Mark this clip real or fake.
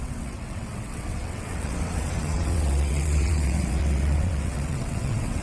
fake